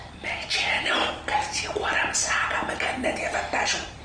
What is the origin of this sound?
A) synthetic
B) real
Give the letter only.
B